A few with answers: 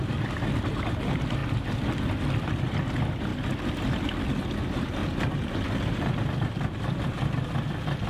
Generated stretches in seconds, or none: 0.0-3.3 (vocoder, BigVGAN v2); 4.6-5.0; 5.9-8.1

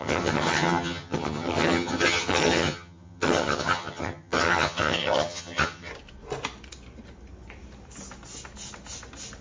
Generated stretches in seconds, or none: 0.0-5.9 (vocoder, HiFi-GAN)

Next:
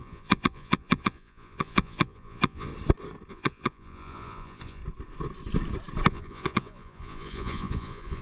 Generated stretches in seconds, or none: 0.0-2.7 (vocoder, Vocos); 3.3-4.8; 6.1-8.2

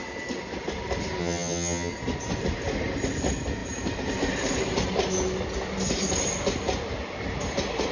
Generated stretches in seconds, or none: 1.2-1.9 (vocoder, HiFi-GAN)

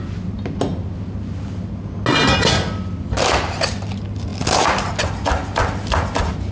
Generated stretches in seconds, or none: none

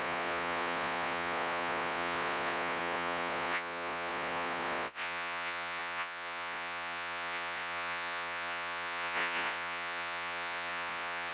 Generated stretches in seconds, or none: 0.0-11.3 (vocoder, Vocos)